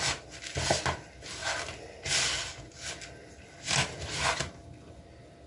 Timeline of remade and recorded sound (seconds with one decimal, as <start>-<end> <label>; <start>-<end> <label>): 0.0-5.5 recorded